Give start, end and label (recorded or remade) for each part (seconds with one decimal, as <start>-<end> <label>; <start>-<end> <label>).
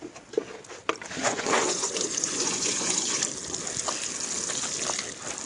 0.0-1.2 recorded; 1.2-3.2 remade; 3.2-5.5 recorded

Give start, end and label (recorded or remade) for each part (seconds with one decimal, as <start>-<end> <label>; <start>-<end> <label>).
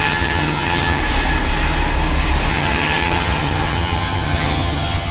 0.0-1.0 remade; 1.0-2.5 recorded; 2.5-5.1 remade